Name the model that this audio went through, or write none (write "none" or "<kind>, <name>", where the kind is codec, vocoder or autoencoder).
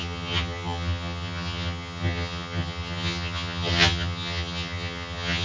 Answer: vocoder, HiFi-GAN